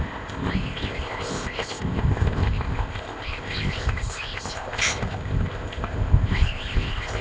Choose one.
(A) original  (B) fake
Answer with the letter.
B